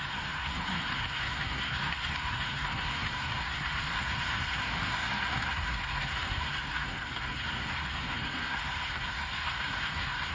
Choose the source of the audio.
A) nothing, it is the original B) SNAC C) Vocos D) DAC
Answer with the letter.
B